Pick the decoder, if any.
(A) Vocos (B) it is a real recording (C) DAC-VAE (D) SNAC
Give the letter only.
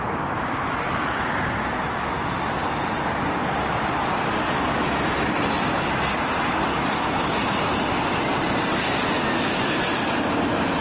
B